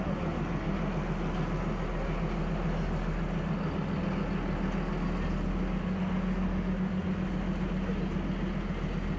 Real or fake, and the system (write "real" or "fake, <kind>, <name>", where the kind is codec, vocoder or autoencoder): real